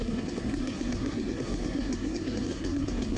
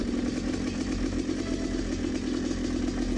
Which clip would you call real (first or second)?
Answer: second